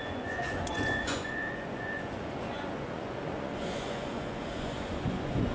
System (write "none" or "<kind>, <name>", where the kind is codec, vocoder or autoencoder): vocoder, Vocos